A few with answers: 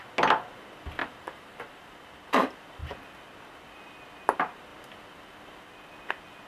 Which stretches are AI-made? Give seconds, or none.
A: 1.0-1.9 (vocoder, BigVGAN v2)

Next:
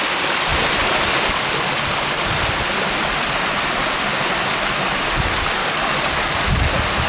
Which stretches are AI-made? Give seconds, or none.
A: 5.6-6.3 (codec, DAC)

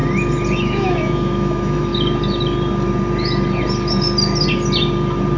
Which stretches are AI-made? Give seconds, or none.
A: 0.6-1.9 (autoencoder, DAC-VAE)